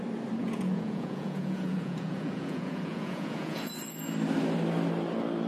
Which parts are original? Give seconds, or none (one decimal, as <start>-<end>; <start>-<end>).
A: 0.0-0.4; 3.7-5.5